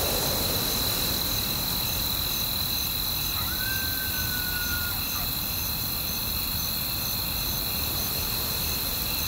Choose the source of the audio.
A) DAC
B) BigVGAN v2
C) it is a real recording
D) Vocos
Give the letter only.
C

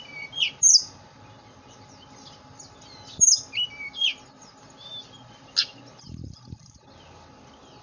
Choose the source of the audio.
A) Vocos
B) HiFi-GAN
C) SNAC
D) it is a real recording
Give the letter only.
D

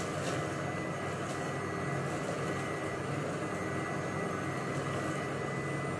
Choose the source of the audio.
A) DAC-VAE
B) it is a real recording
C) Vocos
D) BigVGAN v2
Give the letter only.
B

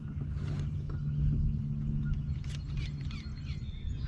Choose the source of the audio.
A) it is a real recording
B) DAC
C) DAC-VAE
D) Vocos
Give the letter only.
A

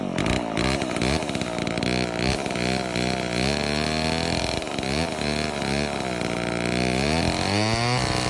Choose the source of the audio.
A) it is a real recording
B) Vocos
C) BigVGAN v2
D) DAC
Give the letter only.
A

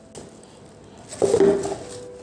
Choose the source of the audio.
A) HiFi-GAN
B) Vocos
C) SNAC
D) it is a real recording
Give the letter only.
D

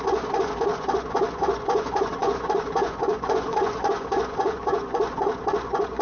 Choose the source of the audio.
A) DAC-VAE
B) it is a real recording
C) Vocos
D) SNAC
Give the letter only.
C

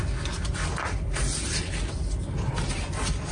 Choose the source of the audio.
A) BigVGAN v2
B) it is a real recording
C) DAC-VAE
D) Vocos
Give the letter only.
B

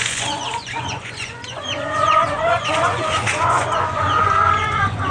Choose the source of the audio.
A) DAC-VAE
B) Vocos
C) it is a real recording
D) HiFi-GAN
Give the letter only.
B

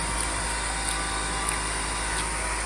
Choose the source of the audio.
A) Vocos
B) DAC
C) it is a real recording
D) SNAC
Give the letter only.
C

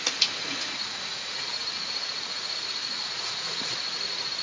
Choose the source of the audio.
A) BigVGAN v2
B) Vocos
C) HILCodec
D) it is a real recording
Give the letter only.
B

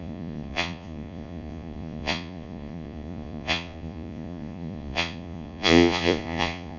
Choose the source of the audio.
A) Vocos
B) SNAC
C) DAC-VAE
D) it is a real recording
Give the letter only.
A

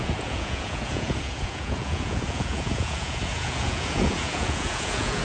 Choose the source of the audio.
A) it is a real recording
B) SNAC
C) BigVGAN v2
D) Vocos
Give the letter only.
D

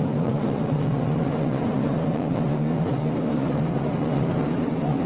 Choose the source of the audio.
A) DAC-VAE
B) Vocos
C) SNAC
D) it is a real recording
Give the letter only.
B